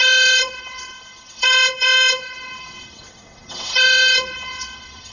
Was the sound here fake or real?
fake